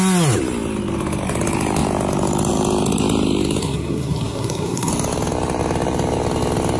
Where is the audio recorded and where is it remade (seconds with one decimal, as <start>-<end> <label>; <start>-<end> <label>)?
0.0-3.6 recorded; 3.6-4.9 remade; 4.9-6.8 recorded